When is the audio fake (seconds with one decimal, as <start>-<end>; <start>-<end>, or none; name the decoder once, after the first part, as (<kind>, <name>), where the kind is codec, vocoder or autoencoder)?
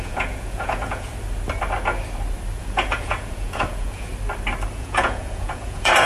0.0-1.1 (vocoder, Vocos); 2.6-4.1; 4.7-6.1